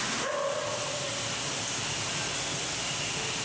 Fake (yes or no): no